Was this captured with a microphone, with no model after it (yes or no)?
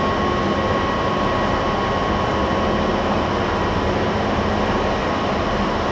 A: yes